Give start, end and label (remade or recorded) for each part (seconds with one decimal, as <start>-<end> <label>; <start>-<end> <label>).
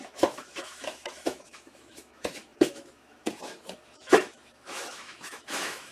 0.0-5.9 remade